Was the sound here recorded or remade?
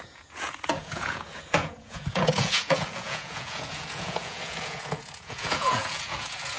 remade